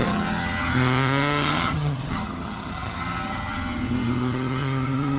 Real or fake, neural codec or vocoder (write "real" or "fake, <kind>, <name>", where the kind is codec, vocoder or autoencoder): fake, vocoder, HiFi-GAN